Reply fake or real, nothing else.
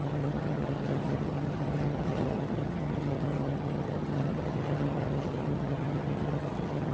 fake